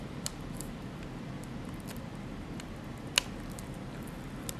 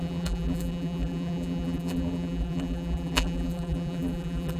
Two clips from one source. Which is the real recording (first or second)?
first